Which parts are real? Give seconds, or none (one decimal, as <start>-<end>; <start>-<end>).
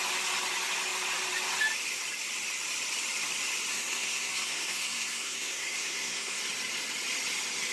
0.0-3.7; 6.4-7.7